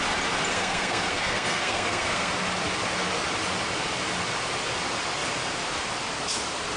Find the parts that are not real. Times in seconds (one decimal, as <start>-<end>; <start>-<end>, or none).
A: 0.5-2.3